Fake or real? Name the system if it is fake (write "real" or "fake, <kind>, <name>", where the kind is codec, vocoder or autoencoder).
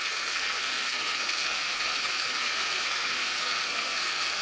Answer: fake, codec, SNAC